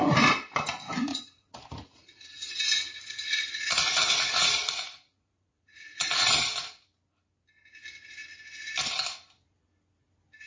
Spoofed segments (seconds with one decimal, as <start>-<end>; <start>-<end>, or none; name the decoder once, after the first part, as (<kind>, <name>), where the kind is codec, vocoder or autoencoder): 1.1-6.3 (vocoder, Vocos)

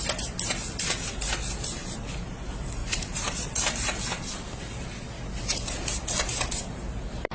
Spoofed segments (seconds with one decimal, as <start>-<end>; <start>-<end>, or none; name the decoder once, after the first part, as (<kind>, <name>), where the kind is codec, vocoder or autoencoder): none

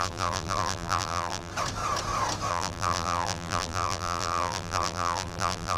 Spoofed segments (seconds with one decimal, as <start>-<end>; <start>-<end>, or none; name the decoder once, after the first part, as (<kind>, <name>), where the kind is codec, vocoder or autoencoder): 0.0-1.5 (vocoder, BigVGAN v2); 2.5-5.8

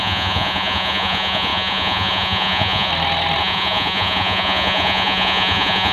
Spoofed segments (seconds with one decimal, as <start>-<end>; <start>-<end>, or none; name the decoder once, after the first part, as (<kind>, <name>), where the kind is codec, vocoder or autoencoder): 0.0-2.9 (vocoder, Vocos); 3.4-5.9

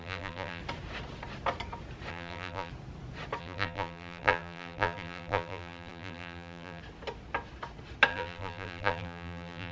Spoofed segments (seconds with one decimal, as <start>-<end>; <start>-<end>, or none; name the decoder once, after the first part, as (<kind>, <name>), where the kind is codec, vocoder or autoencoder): 0.0-0.6 (vocoder, BigVGAN v2); 2.1-2.7; 3.4-6.8; 8.1-9.7

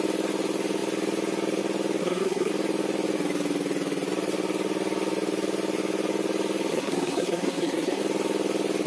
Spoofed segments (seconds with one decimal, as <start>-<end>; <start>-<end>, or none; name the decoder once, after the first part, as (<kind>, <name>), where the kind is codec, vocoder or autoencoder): 2.0-2.5 (codec, SNAC); 6.7-8.0

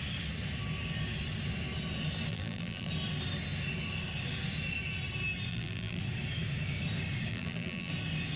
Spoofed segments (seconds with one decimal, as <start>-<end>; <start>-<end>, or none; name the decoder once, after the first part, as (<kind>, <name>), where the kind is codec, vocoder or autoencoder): 2.3-2.9 (vocoder, BigVGAN v2); 5.5-6.0; 7.3-7.9

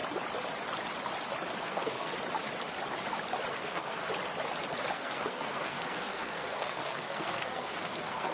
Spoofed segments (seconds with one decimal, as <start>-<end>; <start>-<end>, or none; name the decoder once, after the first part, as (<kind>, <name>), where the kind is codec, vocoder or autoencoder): 1.6-2.1 (codec, SNAC); 3.5-4.0; 4.9-8.3